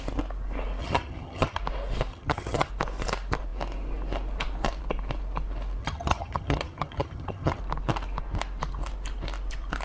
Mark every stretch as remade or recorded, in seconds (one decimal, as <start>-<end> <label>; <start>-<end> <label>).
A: 0.0-0.8 recorded; 0.8-1.6 remade; 1.6-2.1 recorded; 2.1-2.7 remade; 2.7-5.8 recorded; 5.8-7.6 remade; 7.6-9.8 recorded

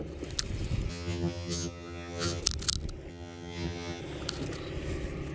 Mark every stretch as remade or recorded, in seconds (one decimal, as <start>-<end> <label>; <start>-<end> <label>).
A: 0.0-0.9 recorded; 0.9-2.4 remade; 2.4-3.1 recorded; 3.1-4.0 remade; 4.0-5.3 recorded

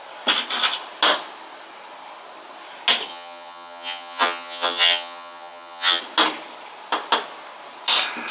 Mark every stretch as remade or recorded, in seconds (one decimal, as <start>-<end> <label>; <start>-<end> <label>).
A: 0.0-3.1 recorded; 3.1-6.0 remade; 6.0-8.3 recorded

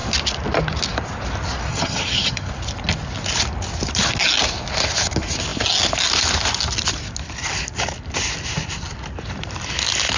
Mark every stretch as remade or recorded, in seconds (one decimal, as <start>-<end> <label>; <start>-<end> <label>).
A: 0.0-1.7 recorded; 1.7-2.5 remade; 2.5-10.2 recorded

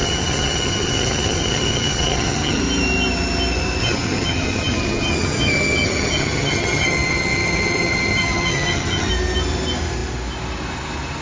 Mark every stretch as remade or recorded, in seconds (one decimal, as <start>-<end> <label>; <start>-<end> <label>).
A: 0.0-2.6 remade; 2.6-3.8 recorded; 3.8-9.1 remade; 9.1-11.2 recorded

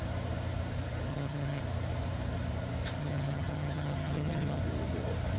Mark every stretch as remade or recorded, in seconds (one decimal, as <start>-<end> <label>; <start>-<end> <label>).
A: 0.0-1.1 recorded; 1.1-1.6 remade; 1.6-3.0 recorded; 3.0-4.6 remade; 4.6-5.4 recorded

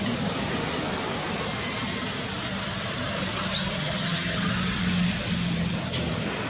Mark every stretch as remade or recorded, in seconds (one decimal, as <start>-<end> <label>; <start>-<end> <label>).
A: 0.0-3.8 recorded; 3.8-4.5 remade; 4.5-6.5 recorded

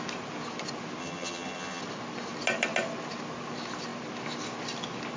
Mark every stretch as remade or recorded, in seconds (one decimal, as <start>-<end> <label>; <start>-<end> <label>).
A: 0.0-1.0 recorded; 1.0-1.8 remade; 1.8-5.2 recorded